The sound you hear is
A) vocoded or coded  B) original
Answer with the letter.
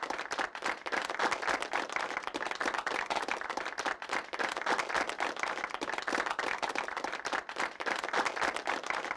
A